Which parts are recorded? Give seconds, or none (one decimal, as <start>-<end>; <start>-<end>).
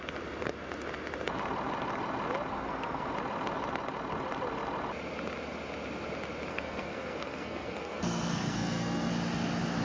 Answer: 0.0-2.5; 3.1-6.5; 9.1-9.8